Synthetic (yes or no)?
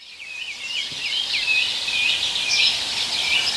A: no